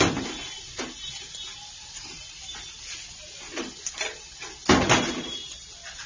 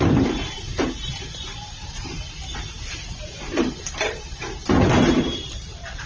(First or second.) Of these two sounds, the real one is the first